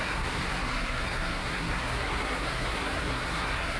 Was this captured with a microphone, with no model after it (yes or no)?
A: no